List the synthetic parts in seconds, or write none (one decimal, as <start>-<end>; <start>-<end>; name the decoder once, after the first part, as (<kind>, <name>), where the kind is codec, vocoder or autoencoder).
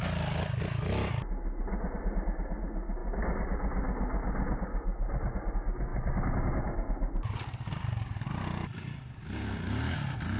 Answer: none